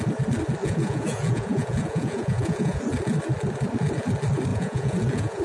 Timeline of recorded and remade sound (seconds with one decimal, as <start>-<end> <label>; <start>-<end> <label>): 0.0-0.6 recorded; 0.6-2.8 remade; 2.8-4.5 recorded; 4.5-5.4 remade